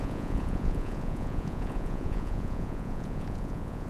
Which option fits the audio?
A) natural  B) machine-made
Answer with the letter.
B